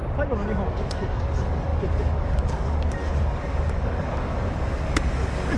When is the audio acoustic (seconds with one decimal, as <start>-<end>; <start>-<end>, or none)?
0.0-0.7